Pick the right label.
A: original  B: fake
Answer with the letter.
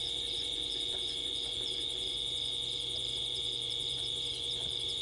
B